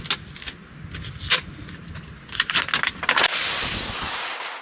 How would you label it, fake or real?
real